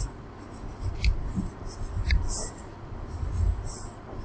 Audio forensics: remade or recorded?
recorded